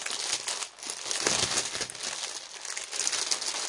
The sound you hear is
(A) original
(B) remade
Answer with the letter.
A